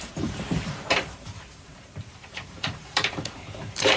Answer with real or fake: fake